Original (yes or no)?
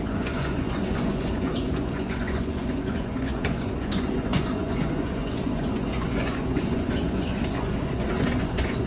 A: no